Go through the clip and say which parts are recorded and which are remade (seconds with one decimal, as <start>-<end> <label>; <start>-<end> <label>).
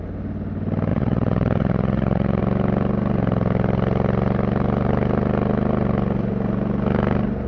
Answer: 0.0-0.9 recorded; 0.9-2.4 remade; 2.4-7.5 recorded